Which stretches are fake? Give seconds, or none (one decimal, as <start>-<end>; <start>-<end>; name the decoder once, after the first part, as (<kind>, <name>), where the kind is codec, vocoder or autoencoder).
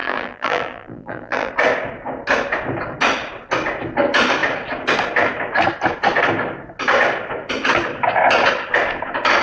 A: 0.0-1.5 (vocoder, BigVGAN v2)